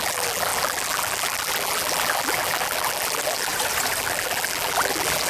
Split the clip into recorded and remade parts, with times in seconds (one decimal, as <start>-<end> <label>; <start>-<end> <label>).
0.0-3.5 remade; 3.5-4.0 recorded; 4.0-5.3 remade